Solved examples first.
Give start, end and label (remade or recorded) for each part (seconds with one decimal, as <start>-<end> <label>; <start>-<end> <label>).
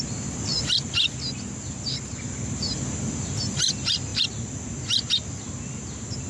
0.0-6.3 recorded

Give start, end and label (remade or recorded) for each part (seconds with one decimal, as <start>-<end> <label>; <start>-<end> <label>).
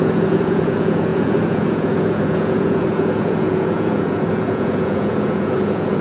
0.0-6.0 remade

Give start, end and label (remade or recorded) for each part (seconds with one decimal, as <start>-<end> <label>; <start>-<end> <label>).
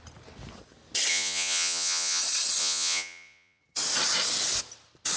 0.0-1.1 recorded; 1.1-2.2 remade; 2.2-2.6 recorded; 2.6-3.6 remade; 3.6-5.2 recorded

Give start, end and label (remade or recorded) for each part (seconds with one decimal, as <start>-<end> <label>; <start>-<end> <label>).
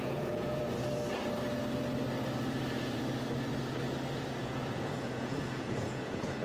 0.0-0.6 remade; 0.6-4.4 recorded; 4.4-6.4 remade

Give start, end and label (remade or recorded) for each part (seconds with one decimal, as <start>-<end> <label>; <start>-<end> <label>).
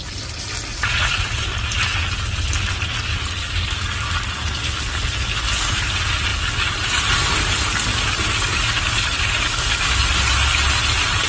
0.0-0.7 recorded; 0.7-1.3 remade; 1.3-11.3 recorded